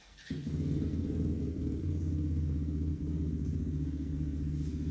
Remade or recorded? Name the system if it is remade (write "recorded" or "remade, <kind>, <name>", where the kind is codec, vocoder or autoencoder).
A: remade, codec, SNAC